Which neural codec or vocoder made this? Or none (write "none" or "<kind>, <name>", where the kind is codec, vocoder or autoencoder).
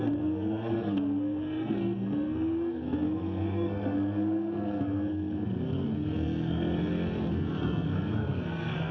codec, SNAC